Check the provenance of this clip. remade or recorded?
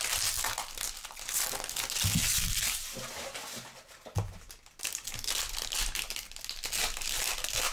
recorded